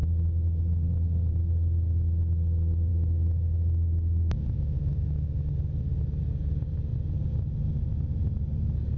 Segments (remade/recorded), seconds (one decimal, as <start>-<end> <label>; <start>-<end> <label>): 0.0-2.9 recorded; 2.9-5.5 remade; 5.5-9.0 recorded